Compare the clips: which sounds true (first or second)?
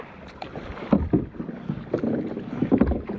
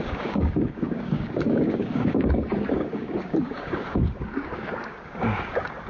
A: first